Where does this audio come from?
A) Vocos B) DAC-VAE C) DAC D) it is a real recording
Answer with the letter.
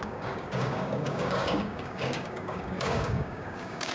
C